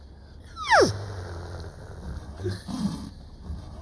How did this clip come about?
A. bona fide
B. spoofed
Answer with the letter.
A